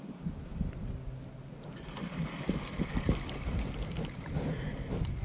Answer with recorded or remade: recorded